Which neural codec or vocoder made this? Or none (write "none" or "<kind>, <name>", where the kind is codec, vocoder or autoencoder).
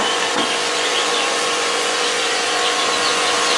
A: vocoder, Vocos